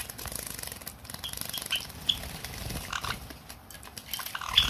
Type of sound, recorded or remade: recorded